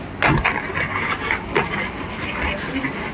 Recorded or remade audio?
recorded